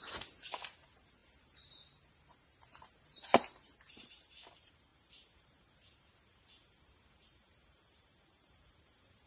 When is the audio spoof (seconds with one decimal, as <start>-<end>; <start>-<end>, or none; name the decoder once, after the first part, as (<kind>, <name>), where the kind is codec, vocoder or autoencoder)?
0.0-9.3 (vocoder, BigVGAN v2)